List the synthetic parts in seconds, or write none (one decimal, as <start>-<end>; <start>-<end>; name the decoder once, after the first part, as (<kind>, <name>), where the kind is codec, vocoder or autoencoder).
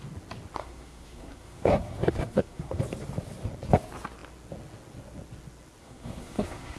0.6-2.8 (codec, SNAC); 5.8-6.8